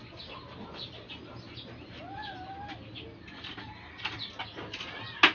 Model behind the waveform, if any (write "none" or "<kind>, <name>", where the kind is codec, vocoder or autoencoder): none